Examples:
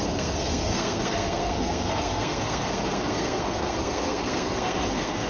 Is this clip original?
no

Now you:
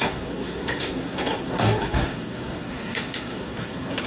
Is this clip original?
no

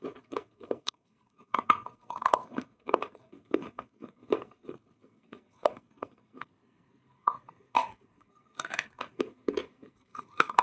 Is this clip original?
no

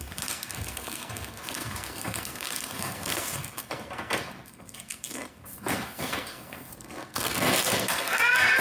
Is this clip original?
no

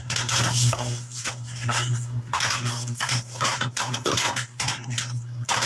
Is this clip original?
no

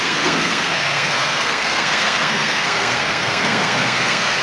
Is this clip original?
no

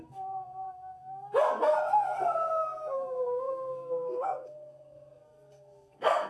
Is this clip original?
no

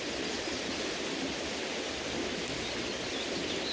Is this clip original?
yes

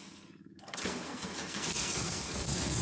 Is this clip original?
no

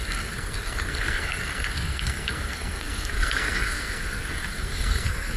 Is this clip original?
no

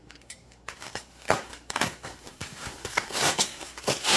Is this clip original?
no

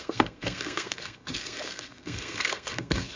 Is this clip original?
no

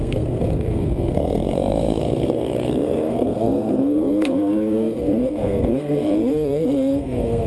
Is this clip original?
no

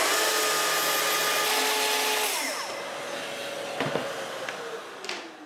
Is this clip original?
yes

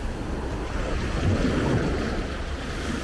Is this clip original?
yes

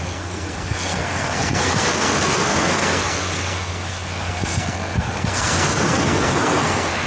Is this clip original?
no